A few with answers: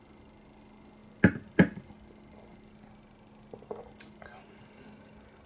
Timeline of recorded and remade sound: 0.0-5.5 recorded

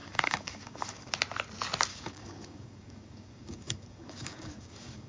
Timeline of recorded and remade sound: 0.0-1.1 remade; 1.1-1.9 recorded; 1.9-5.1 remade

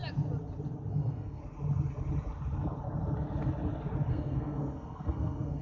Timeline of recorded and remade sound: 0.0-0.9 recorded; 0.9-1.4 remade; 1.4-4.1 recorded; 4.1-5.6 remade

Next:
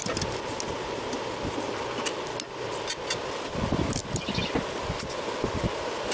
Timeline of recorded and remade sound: 0.0-6.1 recorded

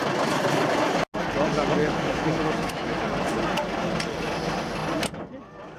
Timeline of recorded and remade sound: 0.0-1.8 recorded; 1.8-3.0 remade; 3.0-5.8 recorded

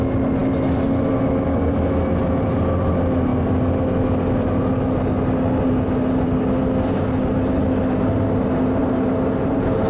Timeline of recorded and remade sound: 0.0-9.9 recorded

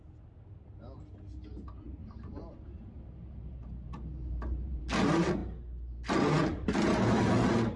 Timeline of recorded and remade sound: 0.0-2.0 recorded; 2.0-5.0 remade; 5.0-6.4 recorded; 6.4-7.2 remade; 7.2-7.8 recorded

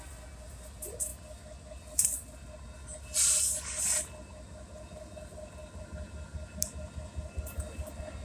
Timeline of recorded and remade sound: 0.0-8.2 recorded